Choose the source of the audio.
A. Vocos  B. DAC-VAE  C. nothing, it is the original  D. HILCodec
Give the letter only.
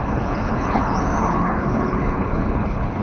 D